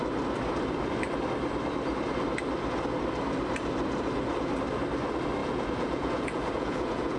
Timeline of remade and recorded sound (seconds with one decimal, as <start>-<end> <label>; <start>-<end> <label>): 0.0-5.4 recorded; 5.4-7.2 remade